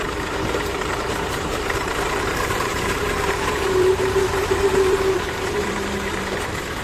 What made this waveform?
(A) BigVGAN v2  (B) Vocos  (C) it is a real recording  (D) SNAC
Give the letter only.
A